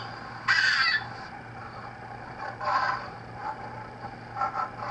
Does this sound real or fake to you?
real